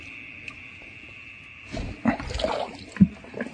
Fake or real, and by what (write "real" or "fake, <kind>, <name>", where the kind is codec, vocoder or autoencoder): real